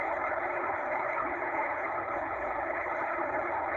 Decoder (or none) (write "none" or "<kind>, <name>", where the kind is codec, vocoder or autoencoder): codec, HILCodec